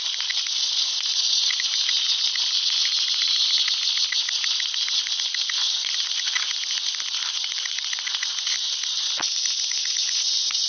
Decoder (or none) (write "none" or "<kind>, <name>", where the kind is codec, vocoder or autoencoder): vocoder, BigVGAN v2